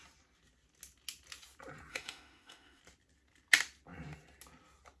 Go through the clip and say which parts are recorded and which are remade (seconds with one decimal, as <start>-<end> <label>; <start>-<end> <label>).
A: 0.0-1.9 recorded; 1.9-2.8 remade; 2.8-5.0 recorded

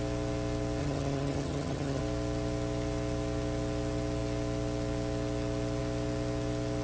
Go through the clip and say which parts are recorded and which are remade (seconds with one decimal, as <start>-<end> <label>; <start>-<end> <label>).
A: 0.0-0.8 recorded; 0.8-2.0 remade; 2.0-6.8 recorded

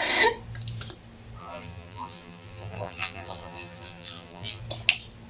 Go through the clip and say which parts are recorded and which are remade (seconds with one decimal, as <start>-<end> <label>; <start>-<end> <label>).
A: 0.0-1.4 recorded; 1.4-4.6 remade; 4.6-5.3 recorded